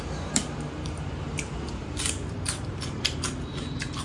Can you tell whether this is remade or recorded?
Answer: remade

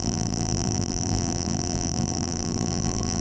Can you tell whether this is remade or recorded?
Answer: remade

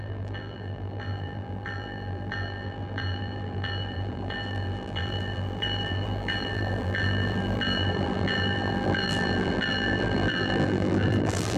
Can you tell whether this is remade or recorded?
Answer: remade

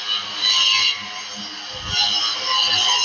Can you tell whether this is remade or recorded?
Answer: recorded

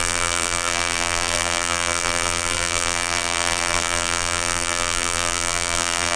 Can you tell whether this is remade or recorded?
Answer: remade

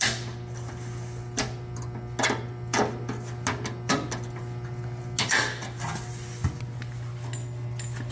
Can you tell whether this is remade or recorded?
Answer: recorded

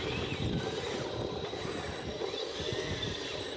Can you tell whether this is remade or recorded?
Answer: remade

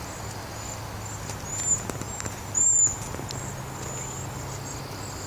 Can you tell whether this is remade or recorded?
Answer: recorded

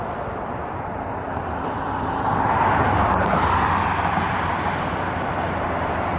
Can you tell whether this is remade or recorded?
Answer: remade